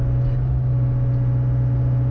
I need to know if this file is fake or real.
real